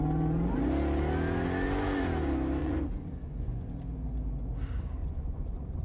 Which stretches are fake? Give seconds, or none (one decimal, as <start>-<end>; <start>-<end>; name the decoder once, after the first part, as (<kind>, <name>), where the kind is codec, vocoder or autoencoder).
2.6-3.7 (vocoder, Vocos); 5.0-5.8